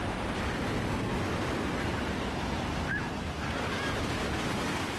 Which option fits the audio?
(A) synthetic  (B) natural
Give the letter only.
B